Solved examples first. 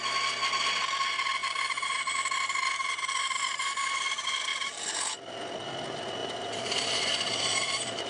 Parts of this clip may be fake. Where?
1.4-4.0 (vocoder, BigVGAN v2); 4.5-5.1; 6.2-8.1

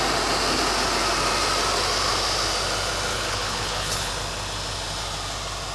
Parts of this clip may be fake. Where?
3.1-4.1 (codec, HILCodec)

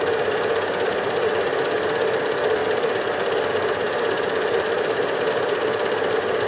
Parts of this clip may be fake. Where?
none